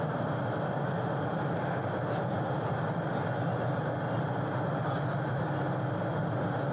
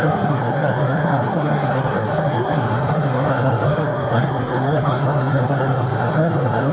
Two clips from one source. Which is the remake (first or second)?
second